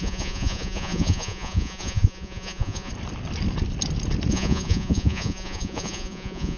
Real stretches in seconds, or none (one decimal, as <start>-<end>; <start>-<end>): 2.9-4.3